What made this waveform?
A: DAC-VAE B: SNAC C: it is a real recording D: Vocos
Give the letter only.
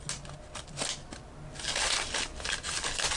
C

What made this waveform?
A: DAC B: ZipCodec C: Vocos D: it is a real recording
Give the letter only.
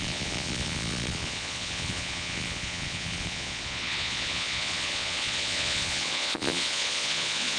C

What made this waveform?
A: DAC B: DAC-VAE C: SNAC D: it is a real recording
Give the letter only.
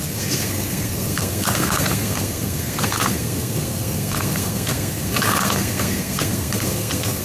C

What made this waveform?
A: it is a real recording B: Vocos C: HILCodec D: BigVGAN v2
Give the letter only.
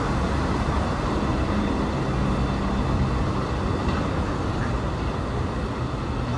A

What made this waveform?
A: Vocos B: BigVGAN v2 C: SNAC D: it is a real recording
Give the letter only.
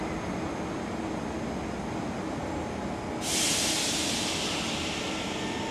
D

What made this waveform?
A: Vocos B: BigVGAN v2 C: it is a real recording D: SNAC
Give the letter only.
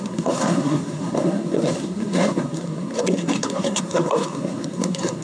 D